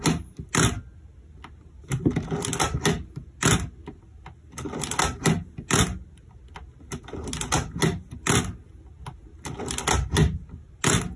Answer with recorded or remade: recorded